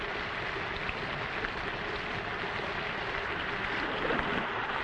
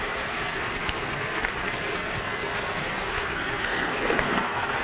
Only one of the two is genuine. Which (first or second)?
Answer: first